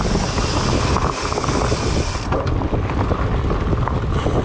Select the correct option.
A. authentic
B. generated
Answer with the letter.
A